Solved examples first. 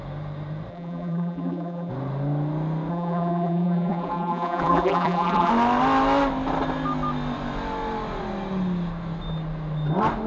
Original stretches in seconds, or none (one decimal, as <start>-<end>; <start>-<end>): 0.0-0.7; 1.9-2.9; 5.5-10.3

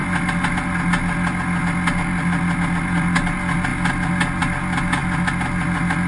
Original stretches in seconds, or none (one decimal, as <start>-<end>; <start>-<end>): 0.0-6.1

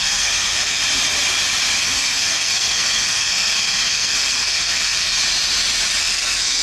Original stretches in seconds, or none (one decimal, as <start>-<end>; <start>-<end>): 0.8-1.8; 5.1-6.0